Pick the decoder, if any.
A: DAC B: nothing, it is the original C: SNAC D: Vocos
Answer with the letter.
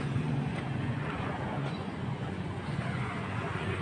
D